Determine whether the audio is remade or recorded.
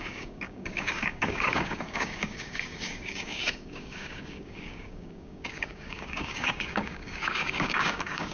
remade